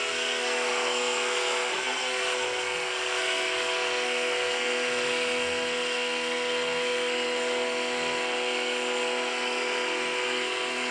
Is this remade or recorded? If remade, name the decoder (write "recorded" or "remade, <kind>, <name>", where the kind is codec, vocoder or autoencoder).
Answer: remade, codec, SNAC